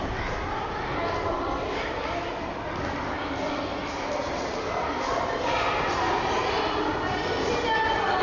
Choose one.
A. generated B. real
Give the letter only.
B